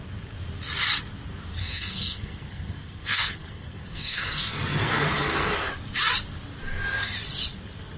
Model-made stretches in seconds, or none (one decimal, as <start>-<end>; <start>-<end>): 1.6-5.7